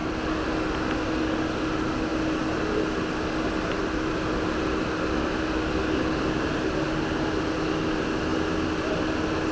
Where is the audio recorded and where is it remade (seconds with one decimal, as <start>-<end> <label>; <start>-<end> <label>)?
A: 0.0-9.5 recorded